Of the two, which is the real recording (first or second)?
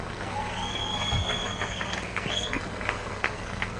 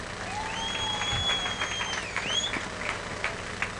second